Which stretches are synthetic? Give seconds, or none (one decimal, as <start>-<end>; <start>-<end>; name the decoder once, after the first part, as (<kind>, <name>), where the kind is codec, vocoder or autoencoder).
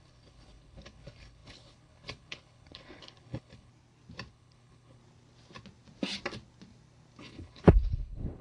0.0-3.7 (codec, HILCodec); 4.3-5.0; 7.2-8.4